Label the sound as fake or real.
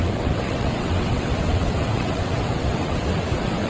fake